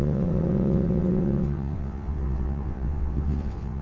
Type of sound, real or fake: fake